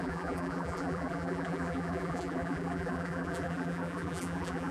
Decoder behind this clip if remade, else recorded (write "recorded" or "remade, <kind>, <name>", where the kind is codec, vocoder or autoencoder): remade, vocoder, BigVGAN v2